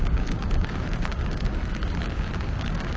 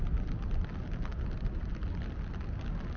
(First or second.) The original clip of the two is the second